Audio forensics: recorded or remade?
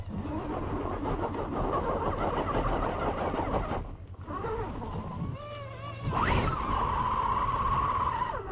recorded